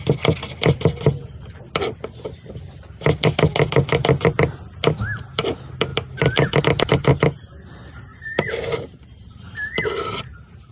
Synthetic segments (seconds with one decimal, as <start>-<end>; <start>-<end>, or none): none